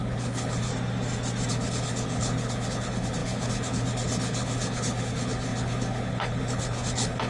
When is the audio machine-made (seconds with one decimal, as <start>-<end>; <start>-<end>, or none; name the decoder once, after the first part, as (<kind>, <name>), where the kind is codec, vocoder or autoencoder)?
0.0-0.7 (codec, HILCodec); 1.5-7.3